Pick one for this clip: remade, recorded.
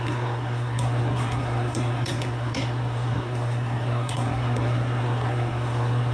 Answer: remade